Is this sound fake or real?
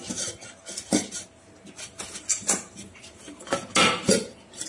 real